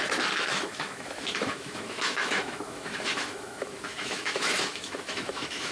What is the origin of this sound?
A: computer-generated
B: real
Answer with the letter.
A